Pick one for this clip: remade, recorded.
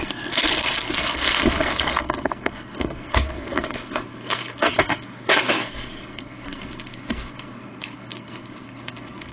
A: remade